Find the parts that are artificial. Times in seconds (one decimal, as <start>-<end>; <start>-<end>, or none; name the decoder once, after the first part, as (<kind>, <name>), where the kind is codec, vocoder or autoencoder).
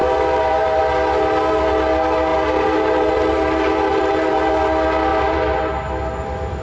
0.0-0.8 (vocoder, BigVGAN v2); 2.3-4.5; 5.1-5.7